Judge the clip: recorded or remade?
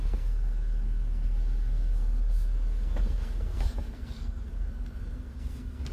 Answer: remade